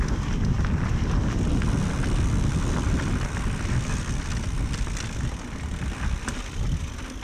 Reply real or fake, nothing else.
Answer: real